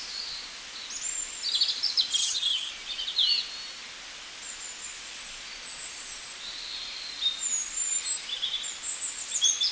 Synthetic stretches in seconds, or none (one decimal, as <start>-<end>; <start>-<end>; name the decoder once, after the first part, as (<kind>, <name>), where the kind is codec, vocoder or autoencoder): 2.2-2.7 (vocoder, HiFi-GAN)